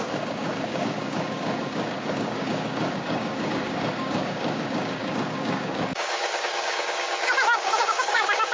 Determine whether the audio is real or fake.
fake